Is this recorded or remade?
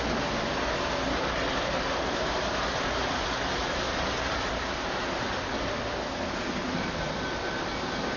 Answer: recorded